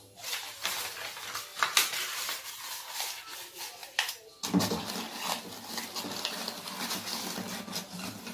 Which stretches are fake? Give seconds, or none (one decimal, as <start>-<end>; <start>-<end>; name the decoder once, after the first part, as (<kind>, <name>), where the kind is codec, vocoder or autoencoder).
1.5-2.5 (vocoder, BigVGAN v2)